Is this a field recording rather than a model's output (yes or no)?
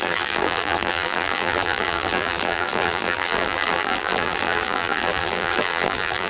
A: no